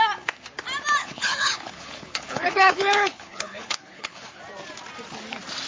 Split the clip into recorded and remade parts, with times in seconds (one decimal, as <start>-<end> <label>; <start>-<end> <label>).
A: 0.0-1.0 recorded; 1.0-4.4 remade; 4.4-5.7 recorded